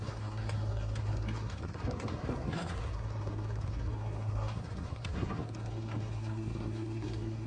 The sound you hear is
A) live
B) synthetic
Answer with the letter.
B